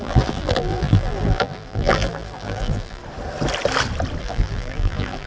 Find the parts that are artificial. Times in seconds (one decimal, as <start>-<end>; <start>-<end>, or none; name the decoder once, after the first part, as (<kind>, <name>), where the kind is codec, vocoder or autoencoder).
0.0-3.0 (vocoder, BigVGAN v2); 4.2-5.3